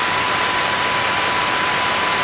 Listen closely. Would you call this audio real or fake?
fake